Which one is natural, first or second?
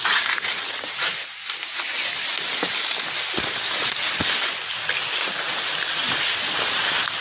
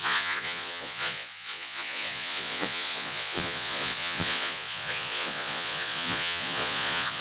first